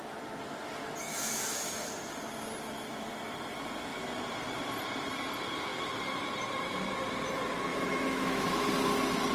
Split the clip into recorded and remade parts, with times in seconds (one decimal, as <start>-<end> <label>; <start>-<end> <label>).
0.0-1.1 recorded; 1.1-1.9 remade; 1.9-7.7 recorded; 7.7-8.7 remade; 8.7-9.3 recorded